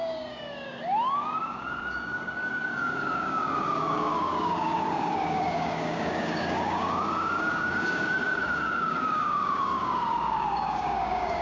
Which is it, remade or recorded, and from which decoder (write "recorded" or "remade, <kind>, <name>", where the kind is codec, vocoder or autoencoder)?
remade, codec, DAC